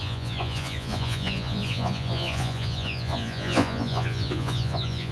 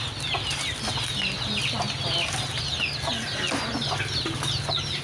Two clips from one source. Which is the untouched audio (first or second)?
second